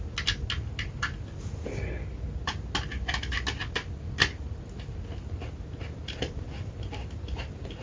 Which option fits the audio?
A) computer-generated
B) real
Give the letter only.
B